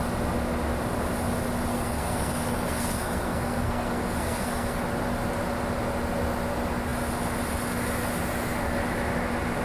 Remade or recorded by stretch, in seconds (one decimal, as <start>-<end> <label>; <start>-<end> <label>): 0.0-1.7 recorded; 1.7-4.8 remade; 4.8-9.6 recorded